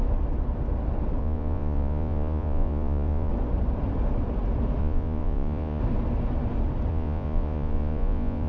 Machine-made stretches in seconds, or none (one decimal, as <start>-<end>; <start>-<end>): 1.2-3.3; 4.8-5.8; 6.9-8.5